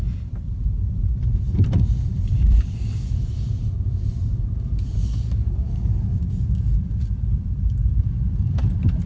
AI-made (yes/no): yes